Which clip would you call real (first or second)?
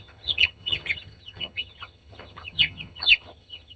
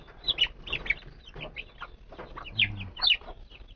second